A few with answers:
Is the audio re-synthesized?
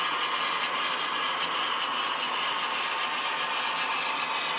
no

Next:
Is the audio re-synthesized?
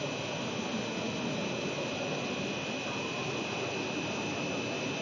no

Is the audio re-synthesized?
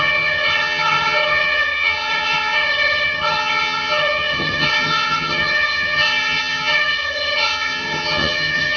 yes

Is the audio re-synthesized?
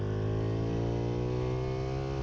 no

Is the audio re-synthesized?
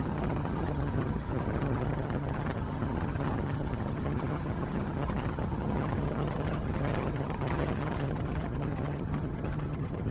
yes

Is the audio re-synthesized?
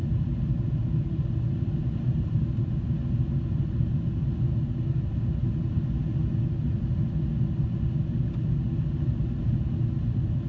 no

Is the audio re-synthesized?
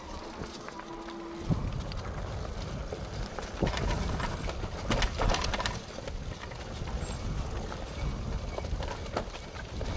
no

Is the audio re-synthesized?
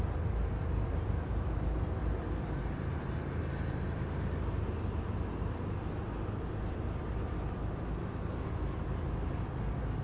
no